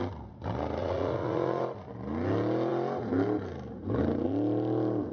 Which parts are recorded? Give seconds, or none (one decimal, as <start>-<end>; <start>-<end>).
0.0-0.8; 1.6-5.1